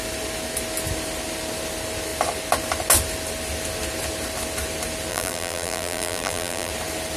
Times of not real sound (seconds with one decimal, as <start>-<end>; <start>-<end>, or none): 5.1-6.7